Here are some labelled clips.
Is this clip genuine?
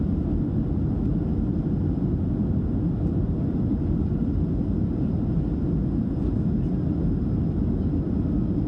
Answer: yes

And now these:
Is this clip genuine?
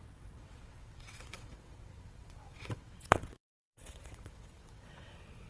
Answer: no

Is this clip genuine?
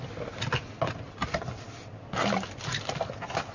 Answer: yes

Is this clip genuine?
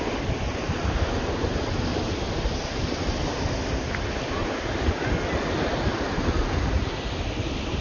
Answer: yes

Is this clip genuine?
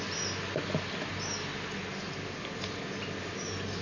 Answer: yes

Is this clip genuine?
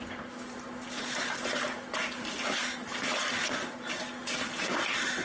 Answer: yes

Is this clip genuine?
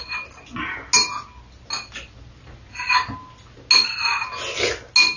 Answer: yes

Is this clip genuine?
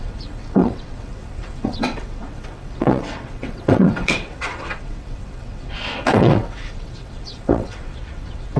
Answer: no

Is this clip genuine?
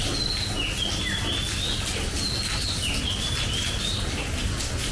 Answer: yes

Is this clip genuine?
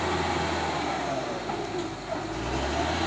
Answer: yes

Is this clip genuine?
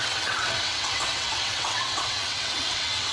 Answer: no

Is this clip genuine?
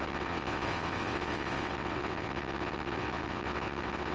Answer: no